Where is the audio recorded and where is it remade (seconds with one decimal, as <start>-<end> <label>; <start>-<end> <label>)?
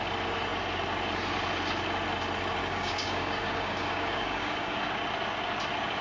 0.0-2.6 recorded; 2.6-4.9 remade; 4.9-6.0 recorded